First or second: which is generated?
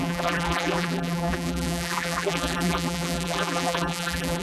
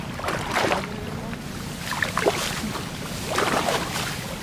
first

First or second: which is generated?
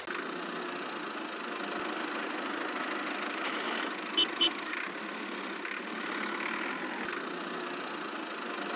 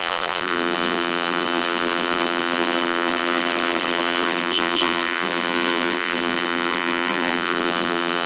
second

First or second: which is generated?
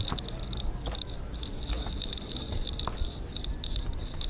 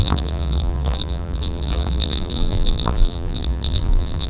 second